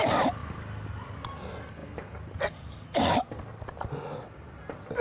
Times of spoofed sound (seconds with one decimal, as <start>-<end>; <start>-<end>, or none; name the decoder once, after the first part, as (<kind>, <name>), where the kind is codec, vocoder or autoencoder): none